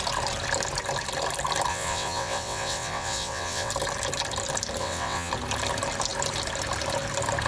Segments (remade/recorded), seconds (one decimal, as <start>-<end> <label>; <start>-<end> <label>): 0.0-1.7 recorded; 1.7-3.7 remade; 3.7-4.8 recorded; 4.8-5.3 remade; 5.3-7.5 recorded